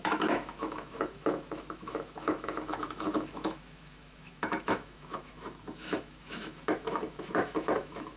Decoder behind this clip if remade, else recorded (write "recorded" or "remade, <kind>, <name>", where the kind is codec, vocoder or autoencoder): remade, autoencoder, DAC-VAE